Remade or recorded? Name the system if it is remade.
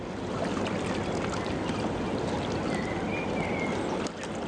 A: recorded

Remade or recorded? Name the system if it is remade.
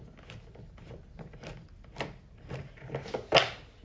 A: recorded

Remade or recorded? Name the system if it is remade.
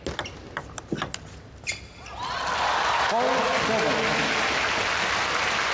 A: recorded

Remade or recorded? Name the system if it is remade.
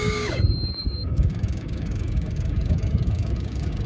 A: remade, codec, DAC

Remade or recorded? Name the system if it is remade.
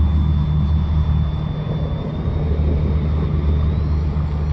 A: recorded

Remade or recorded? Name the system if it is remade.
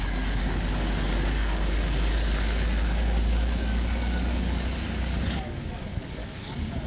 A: remade, codec, DAC